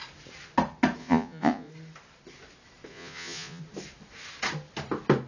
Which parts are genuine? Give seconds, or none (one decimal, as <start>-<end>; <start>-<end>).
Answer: 0.0-1.0; 1.7-2.9; 3.6-5.3